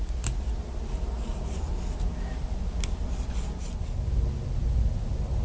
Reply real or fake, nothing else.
real